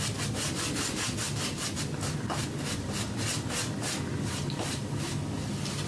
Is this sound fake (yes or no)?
no